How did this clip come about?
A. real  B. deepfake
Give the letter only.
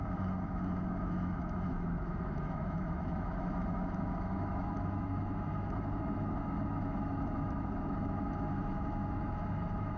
B